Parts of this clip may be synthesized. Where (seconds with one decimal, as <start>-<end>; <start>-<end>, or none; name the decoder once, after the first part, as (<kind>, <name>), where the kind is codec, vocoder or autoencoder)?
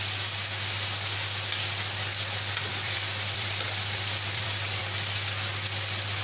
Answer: 2.7-4.8 (vocoder, BigVGAN v2)